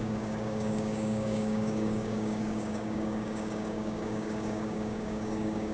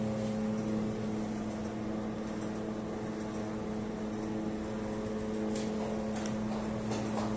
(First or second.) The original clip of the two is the second